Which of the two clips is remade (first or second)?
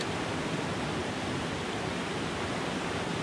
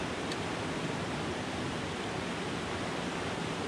first